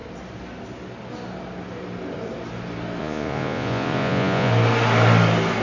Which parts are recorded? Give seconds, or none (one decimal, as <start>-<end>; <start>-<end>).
0.0-3.0; 4.5-5.6